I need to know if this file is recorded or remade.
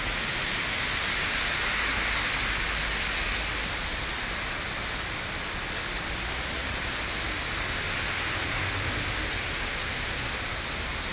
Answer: recorded